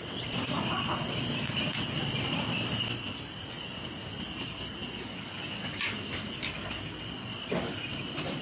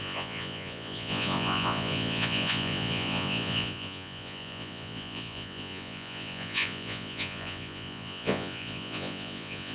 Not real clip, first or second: second